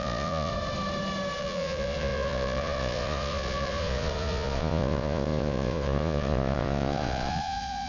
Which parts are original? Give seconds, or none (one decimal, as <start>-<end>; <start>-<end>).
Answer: 0.5-1.4